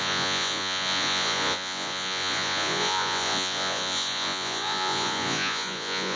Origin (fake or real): fake